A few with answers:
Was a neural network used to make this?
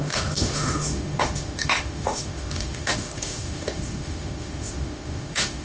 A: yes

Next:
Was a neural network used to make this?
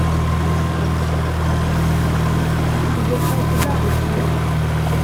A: no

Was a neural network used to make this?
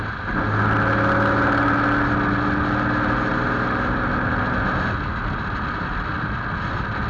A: no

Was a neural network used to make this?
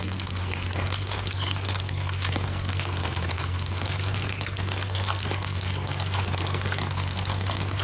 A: yes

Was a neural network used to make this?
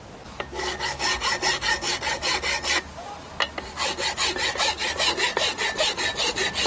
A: no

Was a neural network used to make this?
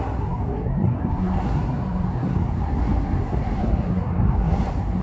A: yes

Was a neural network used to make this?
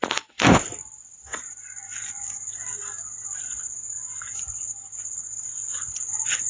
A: no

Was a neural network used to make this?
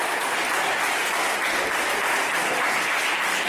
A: no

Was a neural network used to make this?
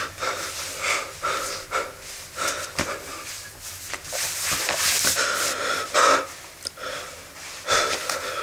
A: no